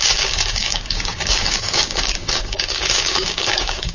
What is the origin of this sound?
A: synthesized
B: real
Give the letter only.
A